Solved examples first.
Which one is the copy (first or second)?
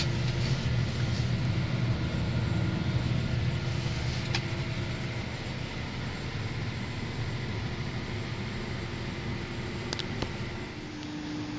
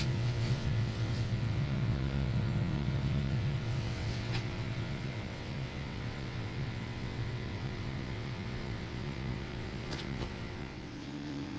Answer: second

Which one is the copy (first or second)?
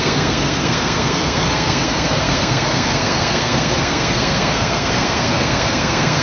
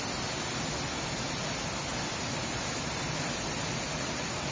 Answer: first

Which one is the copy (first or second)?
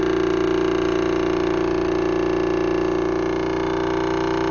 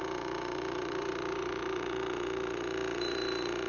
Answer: second